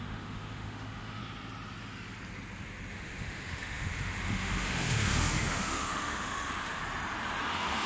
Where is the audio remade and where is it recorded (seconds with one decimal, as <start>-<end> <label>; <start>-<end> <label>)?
0.0-1.2 remade; 1.2-2.9 recorded; 2.9-6.8 remade; 6.8-7.5 recorded; 7.5-7.9 remade